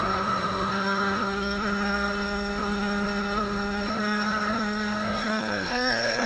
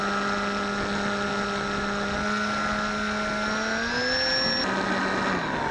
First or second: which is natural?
second